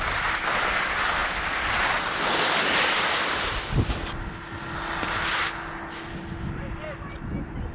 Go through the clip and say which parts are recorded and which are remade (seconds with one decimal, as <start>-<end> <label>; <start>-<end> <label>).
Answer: 0.0-7.7 recorded